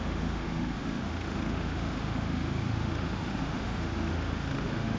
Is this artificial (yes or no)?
yes